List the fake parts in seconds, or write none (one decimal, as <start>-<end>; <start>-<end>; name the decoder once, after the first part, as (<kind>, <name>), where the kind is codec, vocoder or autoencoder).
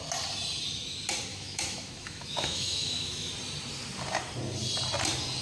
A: 1.3-3.3 (autoencoder, DAC-VAE)